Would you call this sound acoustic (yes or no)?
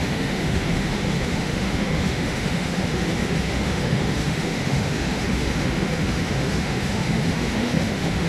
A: no